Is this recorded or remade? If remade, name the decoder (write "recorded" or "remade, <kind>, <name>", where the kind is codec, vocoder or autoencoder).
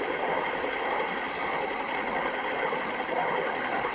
recorded